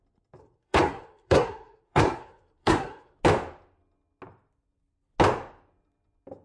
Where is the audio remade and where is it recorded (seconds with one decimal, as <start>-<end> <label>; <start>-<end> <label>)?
0.0-0.4 recorded; 0.4-3.2 remade; 3.2-6.4 recorded